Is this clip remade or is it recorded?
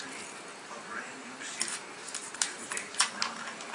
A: recorded